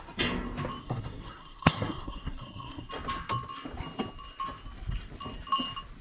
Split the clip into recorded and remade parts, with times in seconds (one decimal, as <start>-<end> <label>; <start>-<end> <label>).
0.0-0.8 recorded; 0.8-2.9 remade; 2.9-6.0 recorded